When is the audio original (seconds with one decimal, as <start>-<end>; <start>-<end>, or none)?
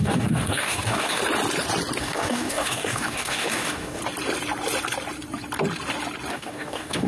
1.2-2.0; 4.0-6.3